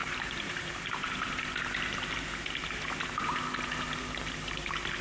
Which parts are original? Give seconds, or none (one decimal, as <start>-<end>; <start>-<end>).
1.4-5.0